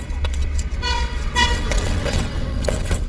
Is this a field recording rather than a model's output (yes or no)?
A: no